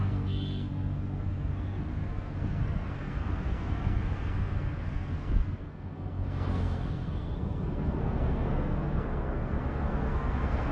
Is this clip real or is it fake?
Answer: fake